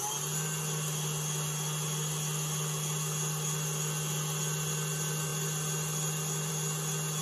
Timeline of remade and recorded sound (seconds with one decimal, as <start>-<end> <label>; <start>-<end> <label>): 0.0-7.2 recorded